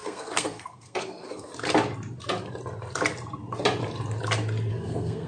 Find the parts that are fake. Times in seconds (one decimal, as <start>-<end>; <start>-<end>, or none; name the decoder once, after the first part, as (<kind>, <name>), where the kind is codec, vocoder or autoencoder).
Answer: 0.0-1.5 (codec, SNAC); 4.7-5.3